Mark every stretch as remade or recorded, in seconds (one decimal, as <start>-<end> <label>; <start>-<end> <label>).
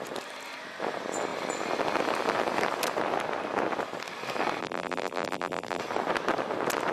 0.0-4.6 recorded; 4.6-5.8 remade; 5.8-6.9 recorded